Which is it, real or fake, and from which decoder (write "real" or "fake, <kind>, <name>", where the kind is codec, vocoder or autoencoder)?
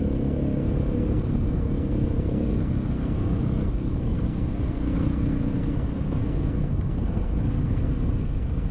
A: fake, codec, SNAC